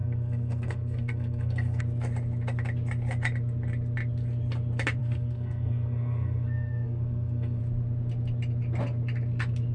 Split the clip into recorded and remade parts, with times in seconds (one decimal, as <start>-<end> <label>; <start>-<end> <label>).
0.0-1.8 remade; 1.8-5.0 recorded; 5.0-7.6 remade; 7.6-9.7 recorded